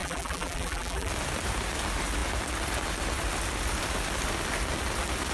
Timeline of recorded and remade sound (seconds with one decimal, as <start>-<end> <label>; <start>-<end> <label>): 0.0-1.1 remade; 1.1-5.3 recorded